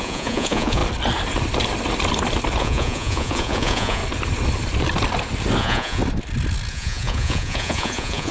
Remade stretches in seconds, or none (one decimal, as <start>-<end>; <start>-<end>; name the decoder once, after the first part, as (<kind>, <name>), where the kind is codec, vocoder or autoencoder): 0.0-0.8 (vocoder, Vocos); 2.6-4.0; 5.6-6.0; 6.7-8.3